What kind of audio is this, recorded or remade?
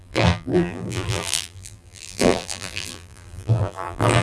remade